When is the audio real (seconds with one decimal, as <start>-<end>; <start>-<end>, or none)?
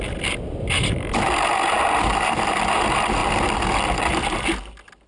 0.0-5.1